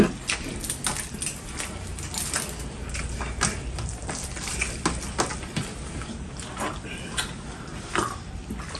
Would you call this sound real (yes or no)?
yes